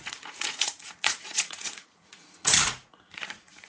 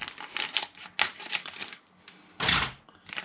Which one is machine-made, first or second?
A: first